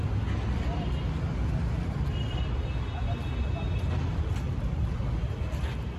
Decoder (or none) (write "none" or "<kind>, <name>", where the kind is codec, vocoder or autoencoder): none